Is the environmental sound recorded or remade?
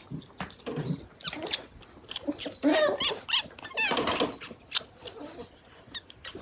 recorded